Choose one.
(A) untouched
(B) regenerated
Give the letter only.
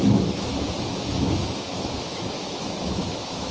B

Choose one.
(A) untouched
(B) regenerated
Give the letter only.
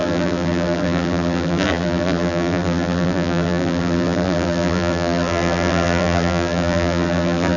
B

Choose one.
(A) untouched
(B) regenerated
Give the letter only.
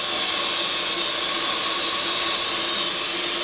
A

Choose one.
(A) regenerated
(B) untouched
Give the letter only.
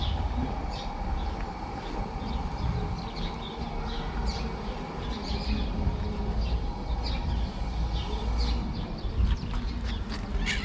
B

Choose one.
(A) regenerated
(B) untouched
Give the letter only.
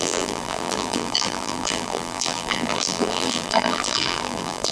A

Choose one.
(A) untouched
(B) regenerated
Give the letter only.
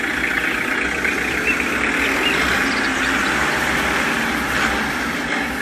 A